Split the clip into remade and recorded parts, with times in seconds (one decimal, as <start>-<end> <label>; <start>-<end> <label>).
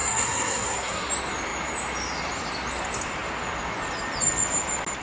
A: 0.0-1.1 remade; 1.1-5.0 recorded